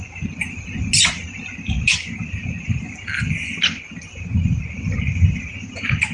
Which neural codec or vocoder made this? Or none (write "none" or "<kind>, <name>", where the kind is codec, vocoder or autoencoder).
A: none